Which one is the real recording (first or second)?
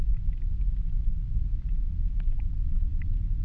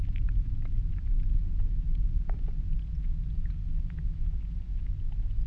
first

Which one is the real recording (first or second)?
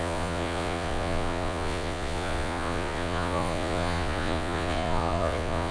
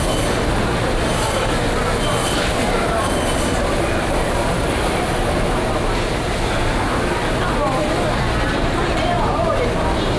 second